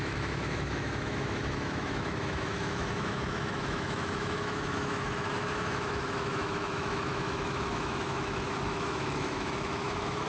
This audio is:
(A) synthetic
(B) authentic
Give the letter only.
A